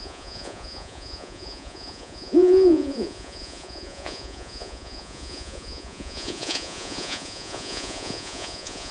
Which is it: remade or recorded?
remade